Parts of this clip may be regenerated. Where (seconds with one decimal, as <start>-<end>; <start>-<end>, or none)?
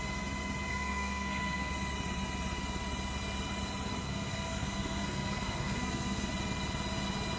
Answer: 0.7-1.7; 4.0-6.3